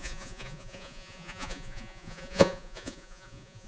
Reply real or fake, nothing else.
fake